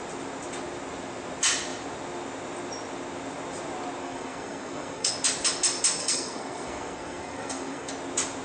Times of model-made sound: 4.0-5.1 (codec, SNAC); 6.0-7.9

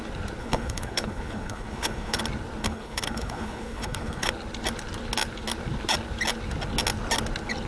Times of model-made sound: 0.4-2.2 (codec, HILCodec); 2.6-4.3

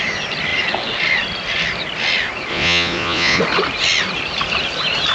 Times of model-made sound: 2.5-3.4 (vocoder, Vocos)

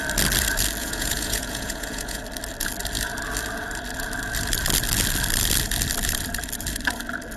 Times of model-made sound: 0.8-2.2 (vocoder, Vocos)

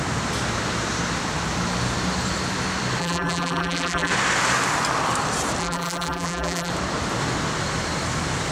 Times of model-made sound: 3.0-4.1 (vocoder, BigVGAN v2); 5.6-6.7